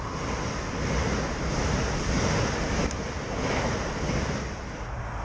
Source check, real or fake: real